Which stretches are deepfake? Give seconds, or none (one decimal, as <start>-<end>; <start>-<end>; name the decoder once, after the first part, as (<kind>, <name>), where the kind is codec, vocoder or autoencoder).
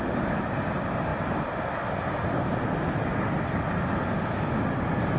none